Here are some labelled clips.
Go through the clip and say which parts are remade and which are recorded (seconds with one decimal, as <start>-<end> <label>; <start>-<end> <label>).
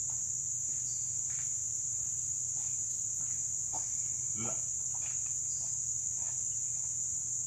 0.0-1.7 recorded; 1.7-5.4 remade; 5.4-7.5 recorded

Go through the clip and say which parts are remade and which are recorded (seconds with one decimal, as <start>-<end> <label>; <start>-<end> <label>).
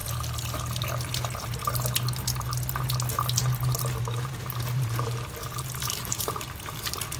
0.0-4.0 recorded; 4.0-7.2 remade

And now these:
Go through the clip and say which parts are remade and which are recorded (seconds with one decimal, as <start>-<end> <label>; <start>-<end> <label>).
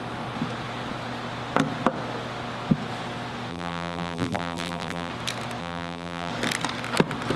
0.0-3.5 recorded; 3.5-5.1 remade; 5.1-5.6 recorded; 5.6-6.3 remade; 6.3-7.4 recorded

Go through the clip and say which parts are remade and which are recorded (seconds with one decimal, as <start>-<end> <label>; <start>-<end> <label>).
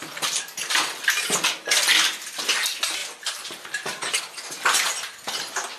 0.0-3.0 recorded; 3.0-4.2 remade; 4.2-5.8 recorded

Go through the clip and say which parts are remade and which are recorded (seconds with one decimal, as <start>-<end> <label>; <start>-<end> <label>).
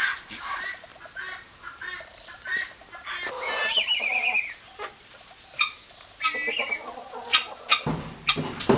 0.0-0.9 remade; 0.9-1.8 recorded; 1.8-2.5 remade; 2.5-3.3 recorded; 3.3-4.1 remade; 4.1-8.3 recorded; 8.3-8.8 remade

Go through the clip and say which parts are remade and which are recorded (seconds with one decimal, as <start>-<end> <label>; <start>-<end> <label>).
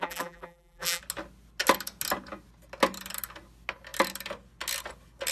0.0-1.0 remade; 1.0-5.3 recorded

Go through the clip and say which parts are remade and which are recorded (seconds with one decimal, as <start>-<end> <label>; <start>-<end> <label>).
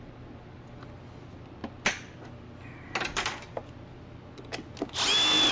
0.0-5.5 recorded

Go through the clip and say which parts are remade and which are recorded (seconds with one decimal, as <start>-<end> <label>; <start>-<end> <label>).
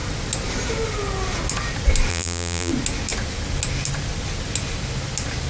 0.0-2.1 recorded; 2.1-2.7 remade; 2.7-5.5 recorded